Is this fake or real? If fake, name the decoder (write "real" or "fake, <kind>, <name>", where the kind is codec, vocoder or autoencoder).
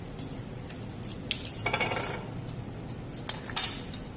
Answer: real